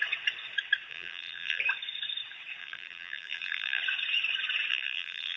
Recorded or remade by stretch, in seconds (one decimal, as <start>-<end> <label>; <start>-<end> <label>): 0.0-0.9 recorded; 0.9-1.6 remade; 1.6-2.6 recorded; 2.6-3.8 remade; 3.8-4.7 recorded; 4.7-5.4 remade